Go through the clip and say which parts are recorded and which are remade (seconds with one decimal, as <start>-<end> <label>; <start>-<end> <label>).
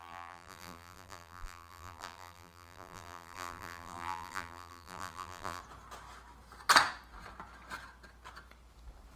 0.0-5.6 remade; 5.6-9.2 recorded